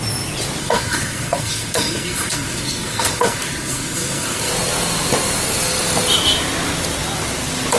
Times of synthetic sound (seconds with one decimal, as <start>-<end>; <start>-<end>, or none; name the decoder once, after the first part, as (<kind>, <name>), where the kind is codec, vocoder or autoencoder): 0.6-4.5 (codec, SNAC)